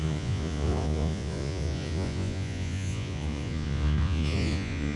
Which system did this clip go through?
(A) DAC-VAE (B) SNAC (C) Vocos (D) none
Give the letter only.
C